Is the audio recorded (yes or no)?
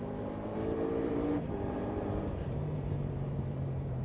no